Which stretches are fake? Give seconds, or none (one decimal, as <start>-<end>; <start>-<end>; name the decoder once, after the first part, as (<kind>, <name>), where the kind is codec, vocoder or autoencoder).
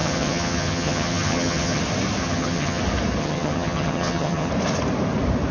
0.0-1.8 (vocoder, HiFi-GAN); 2.2-2.8; 3.2-4.5